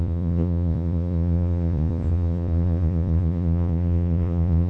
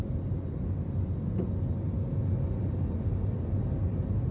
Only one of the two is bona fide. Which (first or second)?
second